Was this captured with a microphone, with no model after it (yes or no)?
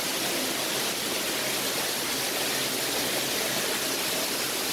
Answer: yes